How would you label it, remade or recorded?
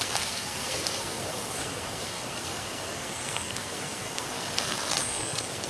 remade